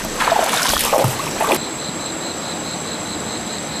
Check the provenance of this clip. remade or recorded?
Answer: remade